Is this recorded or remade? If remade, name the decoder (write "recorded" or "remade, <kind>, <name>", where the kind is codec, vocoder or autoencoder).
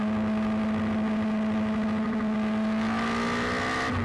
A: recorded